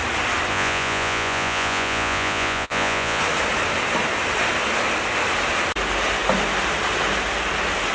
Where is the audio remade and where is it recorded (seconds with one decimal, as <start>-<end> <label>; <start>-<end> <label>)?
0.0-0.5 recorded; 0.5-3.2 remade; 3.2-7.9 recorded